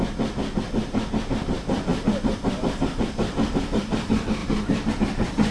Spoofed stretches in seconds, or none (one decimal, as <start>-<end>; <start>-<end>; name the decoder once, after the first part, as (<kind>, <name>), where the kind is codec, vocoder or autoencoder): 4.4-4.9 (vocoder, BigVGAN v2)